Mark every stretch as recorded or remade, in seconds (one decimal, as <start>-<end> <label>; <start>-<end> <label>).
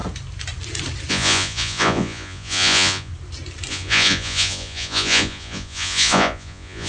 0.0-1.1 recorded; 1.1-3.1 remade; 3.1-3.7 recorded; 3.7-6.9 remade